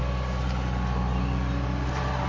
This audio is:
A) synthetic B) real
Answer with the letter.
B